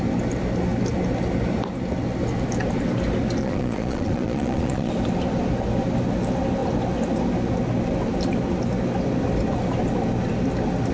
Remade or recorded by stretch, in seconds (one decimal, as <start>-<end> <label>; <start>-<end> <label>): 0.0-3.4 recorded; 3.4-4.9 remade; 4.9-10.9 recorded